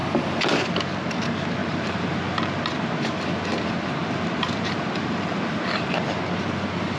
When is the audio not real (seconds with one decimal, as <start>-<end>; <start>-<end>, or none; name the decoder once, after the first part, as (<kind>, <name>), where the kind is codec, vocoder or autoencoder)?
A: 1.6-2.6 (vocoder, BigVGAN v2); 4.0-6.0